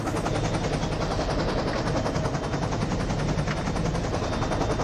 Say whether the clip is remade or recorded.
recorded